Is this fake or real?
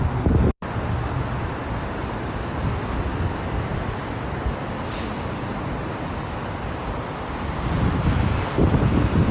fake